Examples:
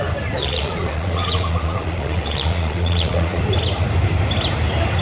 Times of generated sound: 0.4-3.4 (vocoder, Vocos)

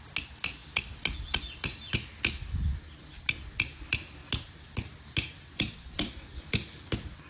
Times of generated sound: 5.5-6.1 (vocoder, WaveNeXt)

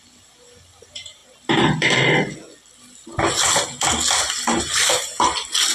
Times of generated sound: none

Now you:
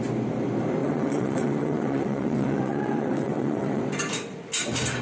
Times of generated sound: 0.8-3.8 (vocoder, WaveNeXt)

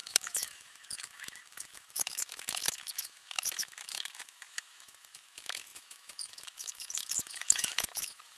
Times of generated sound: 0.0-8.4 (autoencoder, DAC-VAE)

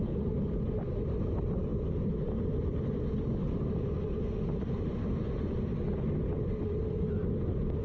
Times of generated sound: none

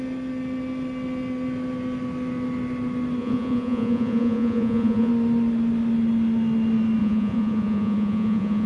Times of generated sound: 3.2-5.1 (vocoder, Vocos); 7.0-8.7

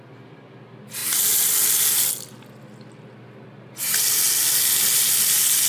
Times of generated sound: none